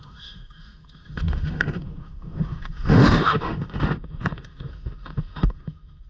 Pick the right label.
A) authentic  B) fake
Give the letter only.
B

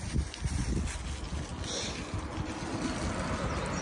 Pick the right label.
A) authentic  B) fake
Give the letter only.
A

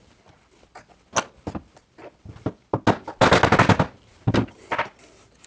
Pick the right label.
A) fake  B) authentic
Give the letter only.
B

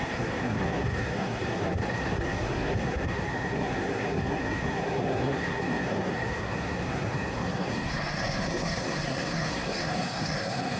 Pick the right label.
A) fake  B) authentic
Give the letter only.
A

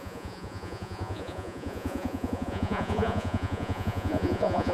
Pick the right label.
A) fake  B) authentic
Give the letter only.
A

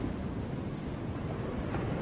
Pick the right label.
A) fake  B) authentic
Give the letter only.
B